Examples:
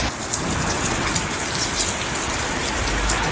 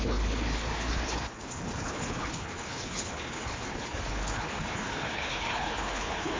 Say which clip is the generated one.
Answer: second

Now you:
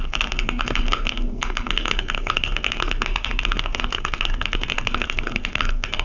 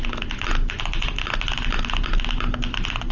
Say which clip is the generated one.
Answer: first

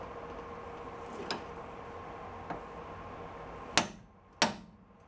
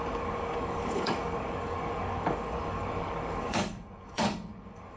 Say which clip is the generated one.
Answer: second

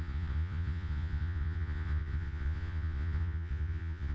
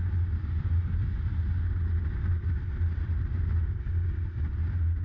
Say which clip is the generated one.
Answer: first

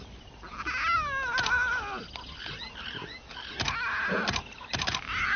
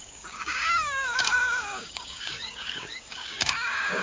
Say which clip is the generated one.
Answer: second